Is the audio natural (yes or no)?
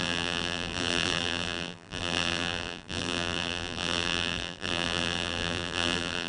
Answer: no